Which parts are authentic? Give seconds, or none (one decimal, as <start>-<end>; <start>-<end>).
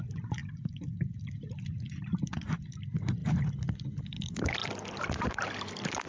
4.6-5.2